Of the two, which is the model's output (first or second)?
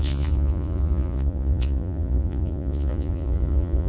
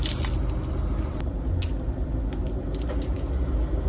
first